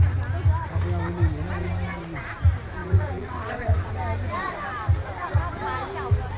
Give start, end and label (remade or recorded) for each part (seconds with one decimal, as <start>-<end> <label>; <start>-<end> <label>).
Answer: 0.0-2.8 recorded; 2.8-3.9 remade; 3.9-6.4 recorded